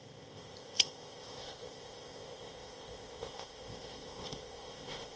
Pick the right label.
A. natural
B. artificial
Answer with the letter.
B